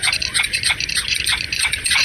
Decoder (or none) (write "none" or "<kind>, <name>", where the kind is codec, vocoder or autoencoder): vocoder, Vocos